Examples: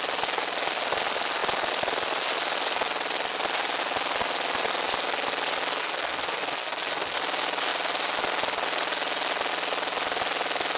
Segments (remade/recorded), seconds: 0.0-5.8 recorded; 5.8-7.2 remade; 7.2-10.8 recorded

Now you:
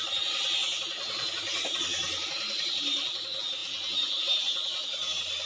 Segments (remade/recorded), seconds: 0.0-5.5 recorded

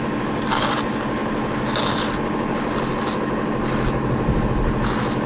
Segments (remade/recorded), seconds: 0.0-5.3 recorded

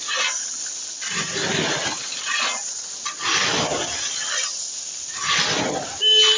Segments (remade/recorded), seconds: 0.0-6.4 recorded

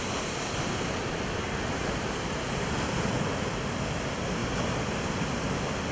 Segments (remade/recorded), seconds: 0.0-5.9 recorded

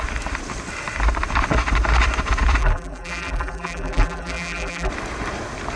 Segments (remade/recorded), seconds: 0.0-2.6 recorded; 2.6-4.9 remade; 4.9-5.8 recorded

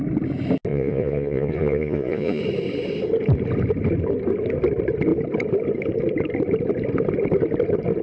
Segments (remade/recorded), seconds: 0.0-0.7 recorded; 0.7-2.4 remade; 2.4-8.0 recorded